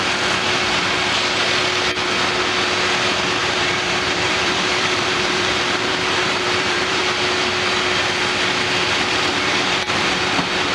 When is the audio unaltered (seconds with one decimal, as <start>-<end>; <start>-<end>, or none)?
0.0-3.4; 7.0-9.3; 10.0-10.7

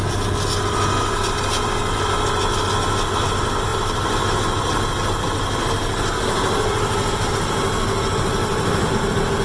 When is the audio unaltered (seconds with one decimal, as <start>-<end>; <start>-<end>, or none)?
0.0-8.4; 8.9-9.4

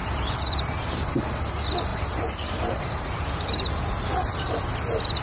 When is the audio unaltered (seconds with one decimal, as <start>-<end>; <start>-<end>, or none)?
1.2-1.9; 4.5-5.2

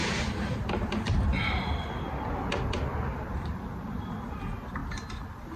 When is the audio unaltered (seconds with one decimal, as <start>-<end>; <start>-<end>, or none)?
3.4-5.6

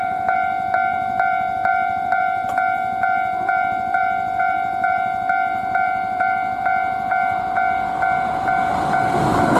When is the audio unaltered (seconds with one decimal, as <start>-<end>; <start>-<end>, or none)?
none

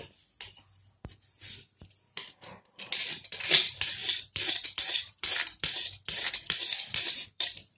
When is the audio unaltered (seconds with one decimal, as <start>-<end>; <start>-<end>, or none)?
0.0-4.0

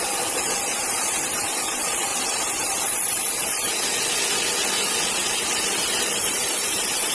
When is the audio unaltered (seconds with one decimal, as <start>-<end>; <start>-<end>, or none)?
2.1-6.3